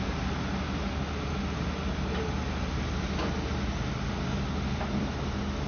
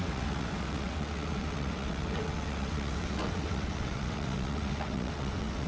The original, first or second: first